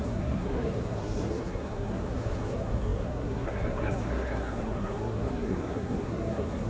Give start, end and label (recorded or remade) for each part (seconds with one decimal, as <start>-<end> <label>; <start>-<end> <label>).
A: 0.0-6.7 remade